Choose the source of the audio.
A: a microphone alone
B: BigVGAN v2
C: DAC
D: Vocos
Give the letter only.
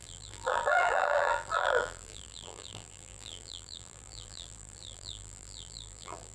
B